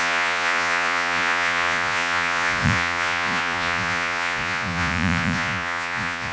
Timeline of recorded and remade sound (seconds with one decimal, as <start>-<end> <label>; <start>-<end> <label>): 0.0-6.3 remade